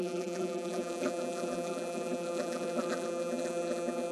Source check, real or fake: fake